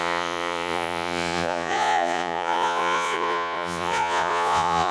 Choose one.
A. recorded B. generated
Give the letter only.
B